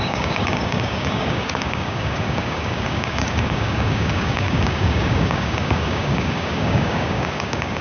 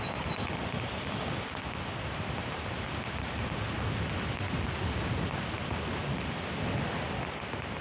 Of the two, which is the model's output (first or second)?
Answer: first